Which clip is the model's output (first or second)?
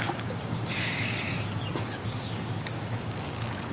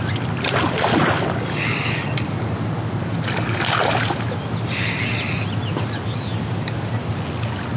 first